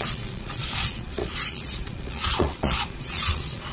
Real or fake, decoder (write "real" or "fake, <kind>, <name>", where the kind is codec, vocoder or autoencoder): fake, vocoder, Vocos